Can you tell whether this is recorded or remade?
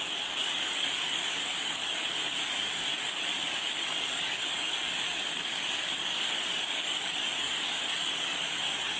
remade